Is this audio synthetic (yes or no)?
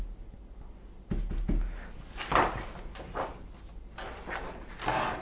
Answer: no